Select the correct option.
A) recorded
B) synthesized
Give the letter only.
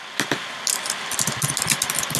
A